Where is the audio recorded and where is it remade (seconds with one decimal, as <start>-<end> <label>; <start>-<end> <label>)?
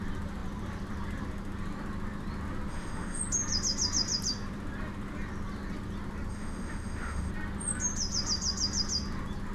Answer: 0.0-2.7 recorded; 2.7-3.2 remade; 3.2-6.3 recorded; 6.3-7.3 remade; 7.3-9.5 recorded